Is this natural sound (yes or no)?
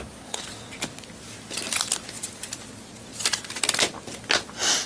yes